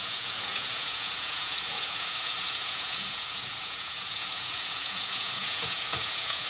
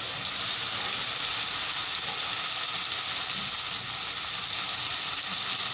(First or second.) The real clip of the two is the second